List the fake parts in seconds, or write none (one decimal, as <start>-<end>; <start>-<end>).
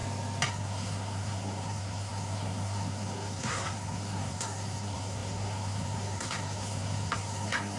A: 0.5-7.8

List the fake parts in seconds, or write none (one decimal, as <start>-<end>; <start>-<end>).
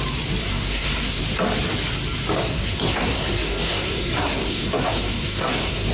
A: 0.4-1.2; 2.4-5.9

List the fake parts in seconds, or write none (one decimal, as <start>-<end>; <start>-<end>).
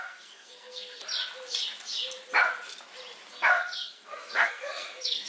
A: 0.0-1.0; 3.3-5.3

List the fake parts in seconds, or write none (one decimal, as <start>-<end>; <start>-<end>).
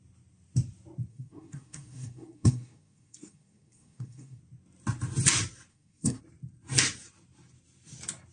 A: 1.1-4.4; 5.7-6.2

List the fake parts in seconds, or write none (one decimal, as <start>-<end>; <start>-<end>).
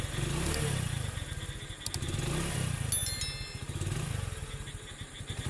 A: none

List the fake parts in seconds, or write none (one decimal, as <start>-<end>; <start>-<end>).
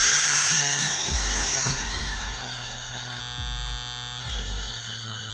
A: 0.0-3.2; 4.2-5.3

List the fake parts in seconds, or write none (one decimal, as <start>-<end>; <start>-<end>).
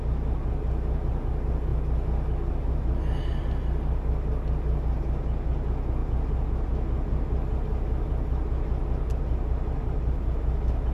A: none